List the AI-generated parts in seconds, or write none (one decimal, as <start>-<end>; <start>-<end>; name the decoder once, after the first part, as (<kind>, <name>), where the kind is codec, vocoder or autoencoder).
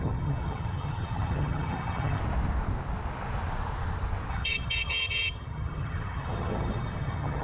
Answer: 0.0-2.2 (vocoder, HiFi-GAN); 4.3-7.4